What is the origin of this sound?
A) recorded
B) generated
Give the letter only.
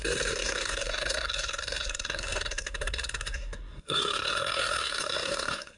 B